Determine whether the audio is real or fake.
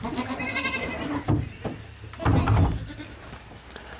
real